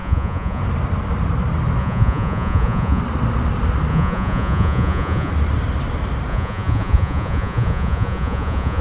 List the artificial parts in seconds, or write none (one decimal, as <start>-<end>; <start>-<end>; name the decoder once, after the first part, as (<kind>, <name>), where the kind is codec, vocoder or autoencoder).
0.0-0.6 (vocoder, Vocos); 1.8-3.0; 3.9-5.3; 6.3-8.8